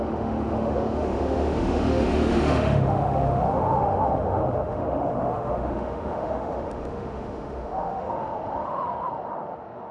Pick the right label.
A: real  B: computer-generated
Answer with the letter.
B